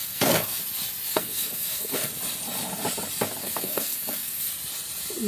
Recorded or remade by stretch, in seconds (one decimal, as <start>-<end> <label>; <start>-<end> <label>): 0.0-0.6 remade; 0.6-1.1 recorded; 1.1-2.1 remade; 2.1-3.4 recorded; 3.4-4.5 remade; 4.5-5.3 recorded